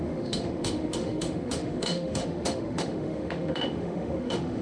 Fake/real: fake